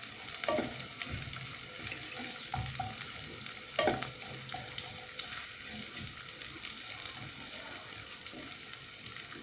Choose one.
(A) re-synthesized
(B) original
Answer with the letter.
B